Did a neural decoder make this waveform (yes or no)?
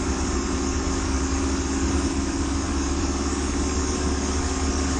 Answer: yes